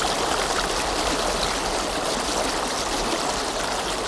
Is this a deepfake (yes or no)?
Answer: no